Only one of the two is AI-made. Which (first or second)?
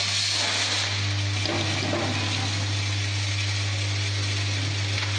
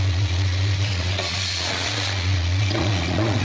second